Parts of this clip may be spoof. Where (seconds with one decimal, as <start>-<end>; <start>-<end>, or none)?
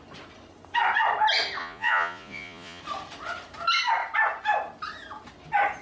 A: 1.6-2.8